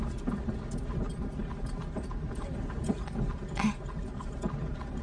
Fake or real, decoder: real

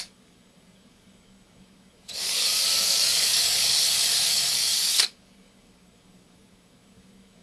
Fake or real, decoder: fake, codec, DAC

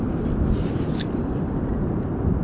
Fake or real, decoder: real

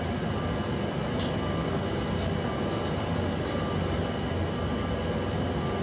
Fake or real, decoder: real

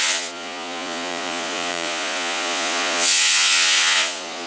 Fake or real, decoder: fake, vocoder, Vocos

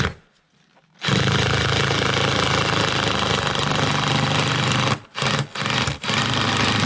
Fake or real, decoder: real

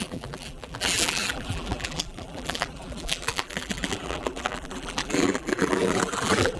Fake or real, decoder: fake, vocoder, BigVGAN v2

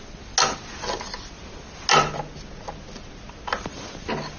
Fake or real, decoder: real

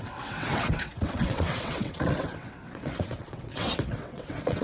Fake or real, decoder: fake, vocoder, WaveNeXt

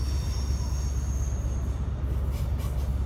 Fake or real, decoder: real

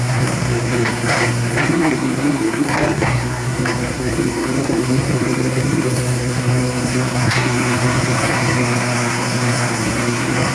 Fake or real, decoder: fake, codec, SNAC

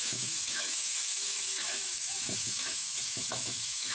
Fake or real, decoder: fake, autoencoder, DAC-VAE